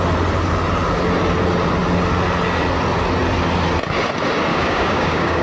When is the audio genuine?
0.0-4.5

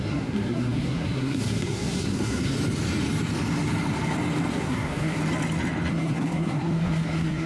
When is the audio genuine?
2.5-4.5; 5.2-5.9

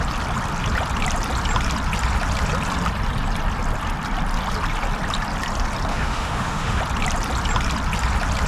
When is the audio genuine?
0.0-5.9; 6.8-8.5

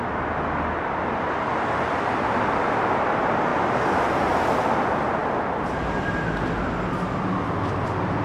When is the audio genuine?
0.0-8.2

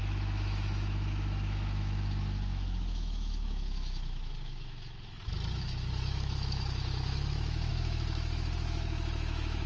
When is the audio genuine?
none

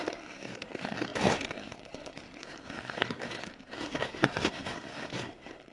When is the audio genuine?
none

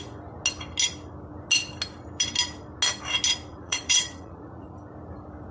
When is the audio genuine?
0.0-3.5; 4.7-5.5